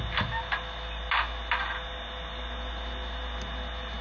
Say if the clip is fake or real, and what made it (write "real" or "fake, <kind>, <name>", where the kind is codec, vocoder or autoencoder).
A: real